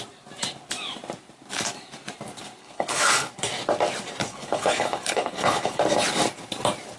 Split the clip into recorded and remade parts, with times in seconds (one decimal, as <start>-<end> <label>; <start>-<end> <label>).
0.0-2.6 recorded; 2.6-3.3 remade; 3.3-4.3 recorded; 4.3-5.8 remade; 5.8-7.0 recorded